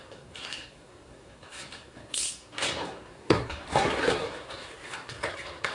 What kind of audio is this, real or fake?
fake